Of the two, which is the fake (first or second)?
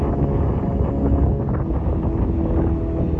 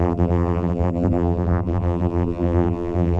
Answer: second